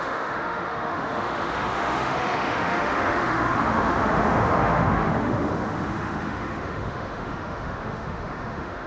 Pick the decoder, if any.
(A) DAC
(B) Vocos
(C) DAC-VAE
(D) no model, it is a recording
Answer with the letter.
C